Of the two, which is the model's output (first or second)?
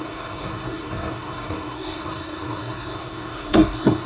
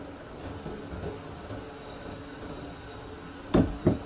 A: first